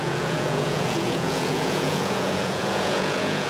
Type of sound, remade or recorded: remade